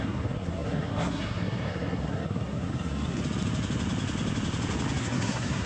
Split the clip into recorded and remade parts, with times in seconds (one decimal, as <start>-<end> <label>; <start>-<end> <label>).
0.0-3.2 remade; 3.2-5.0 recorded; 5.0-5.7 remade